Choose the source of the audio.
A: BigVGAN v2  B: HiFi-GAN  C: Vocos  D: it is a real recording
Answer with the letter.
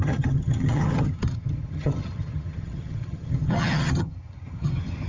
B